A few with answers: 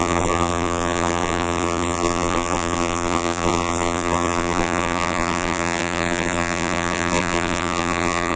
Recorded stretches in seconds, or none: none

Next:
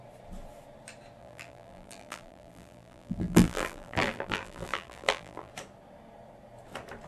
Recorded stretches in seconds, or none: 0.0-1.2; 5.5-7.1

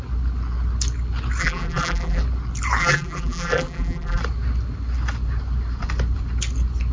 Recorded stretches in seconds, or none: 0.0-1.4; 2.2-2.8; 4.2-6.9

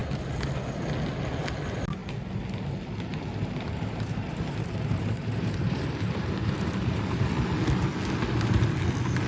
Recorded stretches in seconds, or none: 0.0-3.1; 7.6-9.3

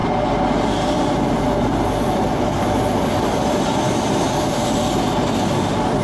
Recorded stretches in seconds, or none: 0.0-6.0